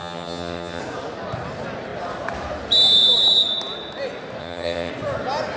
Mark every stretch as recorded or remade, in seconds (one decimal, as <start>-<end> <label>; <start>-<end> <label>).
0.0-0.8 remade; 0.8-4.4 recorded; 4.4-4.9 remade; 4.9-5.6 recorded